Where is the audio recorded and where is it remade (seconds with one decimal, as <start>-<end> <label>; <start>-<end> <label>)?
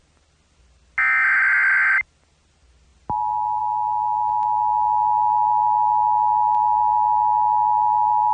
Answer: 0.0-8.3 recorded